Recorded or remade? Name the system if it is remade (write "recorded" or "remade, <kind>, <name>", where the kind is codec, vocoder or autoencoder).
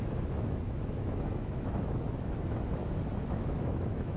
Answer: remade, autoencoder, DAC-VAE